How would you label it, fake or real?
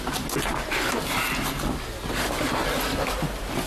real